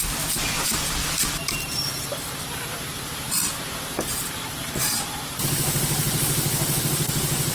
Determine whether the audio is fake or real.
fake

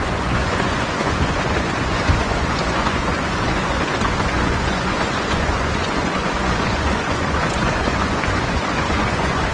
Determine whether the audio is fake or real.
fake